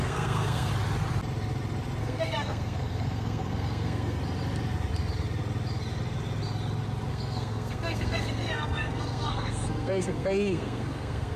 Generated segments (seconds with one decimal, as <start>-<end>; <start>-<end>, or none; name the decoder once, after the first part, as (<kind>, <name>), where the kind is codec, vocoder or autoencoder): 0.0-0.7 (codec, SNAC); 2.0-4.2; 7.1-11.4